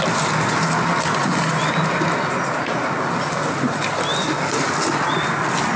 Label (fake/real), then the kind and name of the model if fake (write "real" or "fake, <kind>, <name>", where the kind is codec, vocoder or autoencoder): real